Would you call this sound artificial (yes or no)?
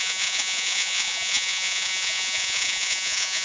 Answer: yes